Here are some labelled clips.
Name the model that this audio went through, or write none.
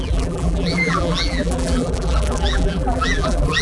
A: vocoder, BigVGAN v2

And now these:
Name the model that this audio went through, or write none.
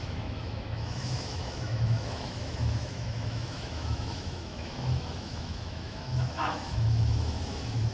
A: autoencoder, DAC-VAE